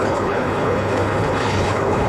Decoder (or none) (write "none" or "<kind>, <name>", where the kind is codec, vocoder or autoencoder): codec, HILCodec